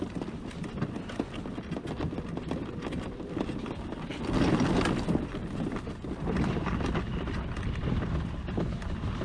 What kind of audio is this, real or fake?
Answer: real